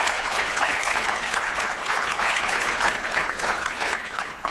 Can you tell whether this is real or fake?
fake